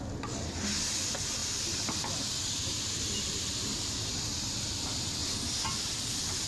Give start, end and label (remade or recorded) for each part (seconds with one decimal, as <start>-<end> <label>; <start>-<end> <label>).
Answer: 0.0-1.4 recorded; 1.4-3.9 remade; 3.9-6.5 recorded